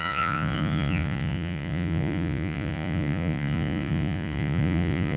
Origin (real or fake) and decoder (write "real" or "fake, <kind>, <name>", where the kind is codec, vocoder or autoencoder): fake, vocoder, Vocos